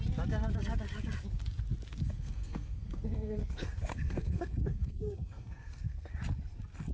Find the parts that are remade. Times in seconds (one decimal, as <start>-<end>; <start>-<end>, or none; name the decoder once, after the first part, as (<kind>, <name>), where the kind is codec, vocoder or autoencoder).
2.0-6.1 (codec, SNAC)